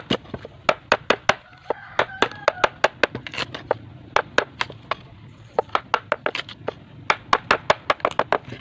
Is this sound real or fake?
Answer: real